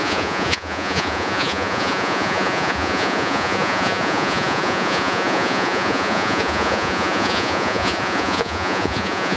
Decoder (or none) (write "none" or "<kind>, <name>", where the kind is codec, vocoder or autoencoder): vocoder, Vocos